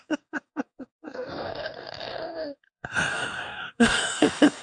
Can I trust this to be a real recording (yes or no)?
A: no